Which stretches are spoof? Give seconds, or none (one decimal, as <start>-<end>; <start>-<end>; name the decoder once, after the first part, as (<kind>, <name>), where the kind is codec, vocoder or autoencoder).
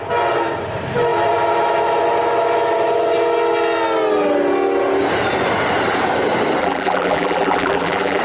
6.6-8.2 (vocoder, BigVGAN v2)